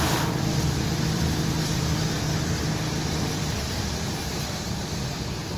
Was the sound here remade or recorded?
remade